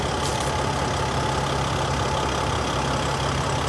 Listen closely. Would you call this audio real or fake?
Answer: real